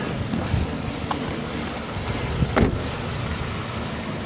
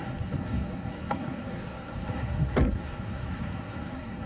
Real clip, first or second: first